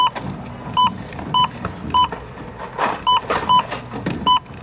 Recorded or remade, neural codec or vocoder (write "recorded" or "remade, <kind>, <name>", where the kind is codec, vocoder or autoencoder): recorded